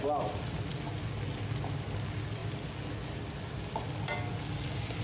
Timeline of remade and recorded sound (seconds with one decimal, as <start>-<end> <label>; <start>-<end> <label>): 0.0-5.0 recorded